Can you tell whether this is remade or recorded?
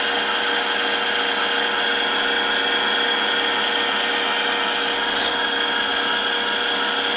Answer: recorded